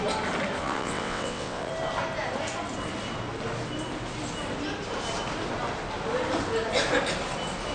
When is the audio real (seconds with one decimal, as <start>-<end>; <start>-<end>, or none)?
0.0-0.6; 1.7-7.7